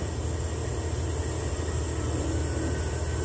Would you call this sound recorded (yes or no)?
yes